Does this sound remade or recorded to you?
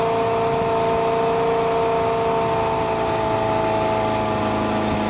recorded